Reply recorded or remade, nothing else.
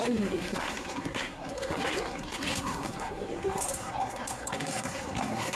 remade